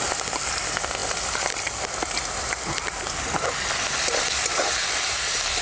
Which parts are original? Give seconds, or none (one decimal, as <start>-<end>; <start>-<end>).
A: 0.0-5.6